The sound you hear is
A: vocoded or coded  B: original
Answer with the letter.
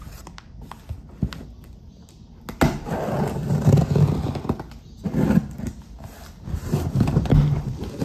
B